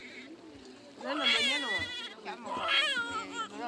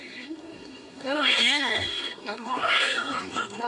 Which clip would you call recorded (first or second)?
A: first